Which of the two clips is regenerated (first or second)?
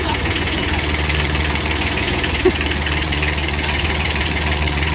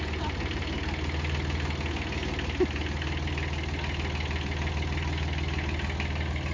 first